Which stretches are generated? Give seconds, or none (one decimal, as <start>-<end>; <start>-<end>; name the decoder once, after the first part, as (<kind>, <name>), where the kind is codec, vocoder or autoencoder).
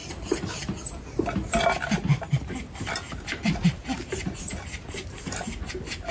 none